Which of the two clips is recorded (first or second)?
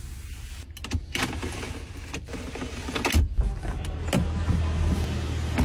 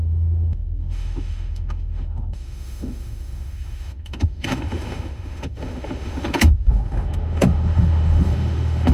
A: first